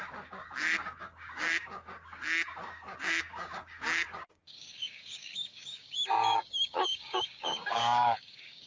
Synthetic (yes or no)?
yes